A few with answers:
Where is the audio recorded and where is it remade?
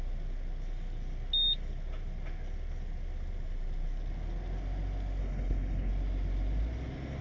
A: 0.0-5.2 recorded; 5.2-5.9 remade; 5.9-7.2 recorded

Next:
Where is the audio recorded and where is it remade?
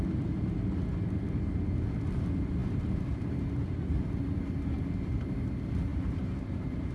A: 0.0-5.9 recorded; 5.9-6.9 remade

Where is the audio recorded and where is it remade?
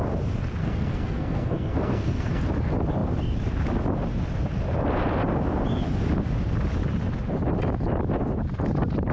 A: 0.0-0.6 recorded; 0.6-2.4 remade; 2.4-9.1 recorded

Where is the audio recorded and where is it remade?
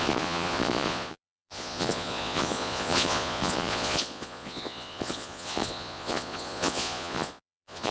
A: 0.0-7.9 remade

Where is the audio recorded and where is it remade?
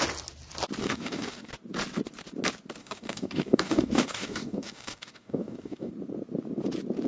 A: 0.0-0.8 recorded; 0.8-1.5 remade; 1.5-2.8 recorded; 2.8-5.9 remade; 5.9-7.1 recorded